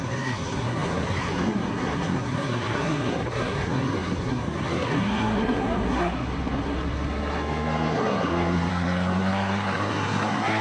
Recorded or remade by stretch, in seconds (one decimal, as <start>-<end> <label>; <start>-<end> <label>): 0.0-10.6 remade